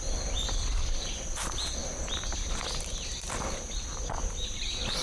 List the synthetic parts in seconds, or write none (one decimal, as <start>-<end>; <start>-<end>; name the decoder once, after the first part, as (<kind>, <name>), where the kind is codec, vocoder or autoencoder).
none